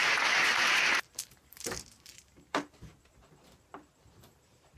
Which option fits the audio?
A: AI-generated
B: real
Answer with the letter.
A